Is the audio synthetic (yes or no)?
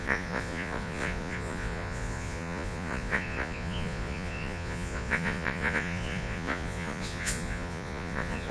yes